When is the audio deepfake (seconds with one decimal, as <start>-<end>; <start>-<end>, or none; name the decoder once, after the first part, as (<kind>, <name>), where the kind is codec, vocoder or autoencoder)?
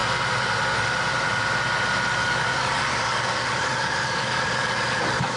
2.2-5.4 (codec, DAC)